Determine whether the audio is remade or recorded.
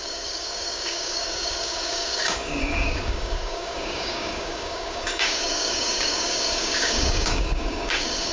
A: remade